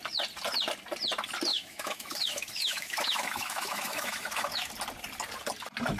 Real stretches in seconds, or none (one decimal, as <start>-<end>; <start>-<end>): 0.0-1.5; 4.7-6.0

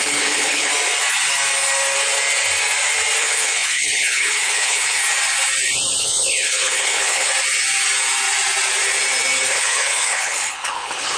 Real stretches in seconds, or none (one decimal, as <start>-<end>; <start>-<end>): 0.7-3.2; 5.0-6.0; 7.3-9.5

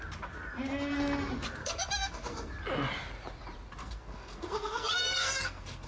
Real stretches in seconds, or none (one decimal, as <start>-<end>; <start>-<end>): 0.0-1.6; 2.5-3.8

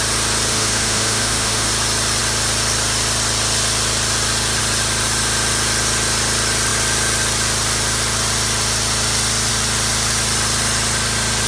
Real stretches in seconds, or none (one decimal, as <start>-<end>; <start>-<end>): 0.0-0.5; 1.7-11.5

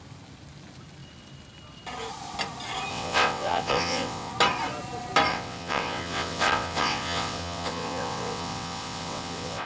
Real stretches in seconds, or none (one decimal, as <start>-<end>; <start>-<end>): 0.0-2.9; 4.3-5.3

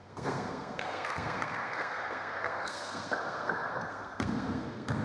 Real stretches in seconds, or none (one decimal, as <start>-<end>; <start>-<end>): none